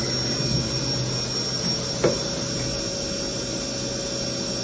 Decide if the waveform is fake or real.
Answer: real